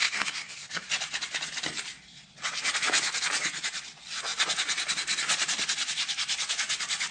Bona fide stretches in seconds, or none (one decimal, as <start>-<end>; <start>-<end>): 0.9-7.1